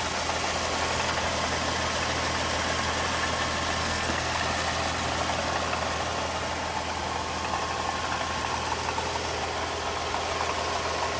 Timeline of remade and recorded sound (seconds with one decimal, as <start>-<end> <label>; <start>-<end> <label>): 0.0-3.8 recorded; 3.8-4.4 remade; 4.4-11.2 recorded